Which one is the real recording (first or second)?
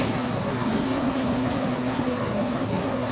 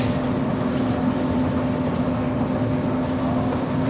second